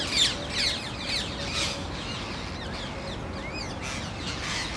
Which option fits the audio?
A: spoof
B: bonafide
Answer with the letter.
B